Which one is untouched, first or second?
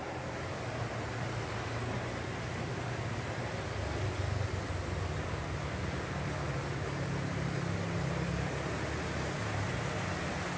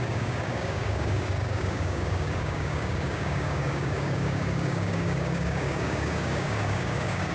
first